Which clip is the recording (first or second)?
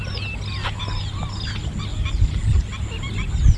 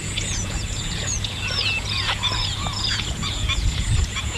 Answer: first